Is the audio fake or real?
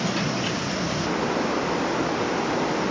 real